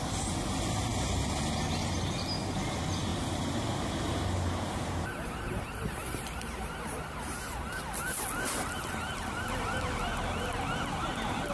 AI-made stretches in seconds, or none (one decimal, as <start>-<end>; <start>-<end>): 3.1-6.8